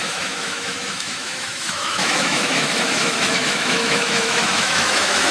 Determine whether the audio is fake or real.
fake